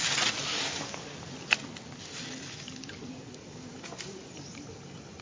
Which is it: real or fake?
real